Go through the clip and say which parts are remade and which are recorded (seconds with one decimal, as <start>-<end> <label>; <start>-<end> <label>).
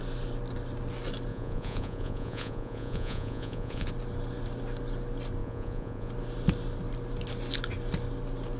0.0-1.3 recorded; 1.3-3.9 remade; 3.9-5.4 recorded; 5.4-6.1 remade; 6.1-8.6 recorded